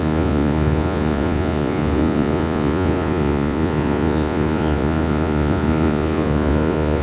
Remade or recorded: remade